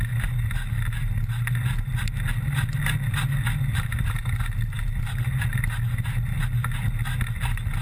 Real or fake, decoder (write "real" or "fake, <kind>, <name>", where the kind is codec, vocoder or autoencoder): real